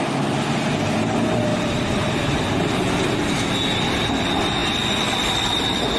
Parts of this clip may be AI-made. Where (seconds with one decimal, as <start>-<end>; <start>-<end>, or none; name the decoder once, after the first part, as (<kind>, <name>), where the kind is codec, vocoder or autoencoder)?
1.5-3.4 (vocoder, BigVGAN v2)